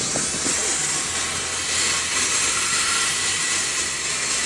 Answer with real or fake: real